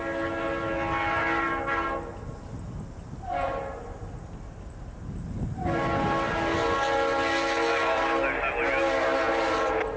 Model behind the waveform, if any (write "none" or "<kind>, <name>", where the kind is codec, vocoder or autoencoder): none